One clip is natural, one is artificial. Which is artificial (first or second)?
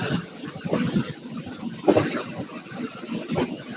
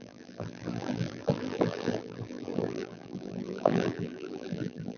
second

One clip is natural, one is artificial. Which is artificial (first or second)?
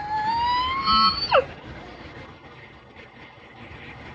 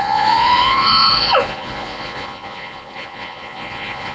second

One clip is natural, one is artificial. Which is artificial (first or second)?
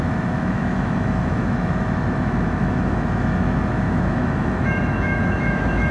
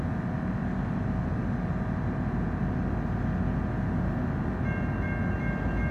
first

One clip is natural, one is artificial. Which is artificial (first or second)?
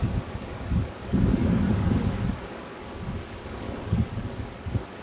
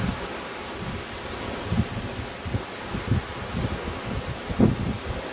first